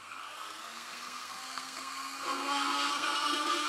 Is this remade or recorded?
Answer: remade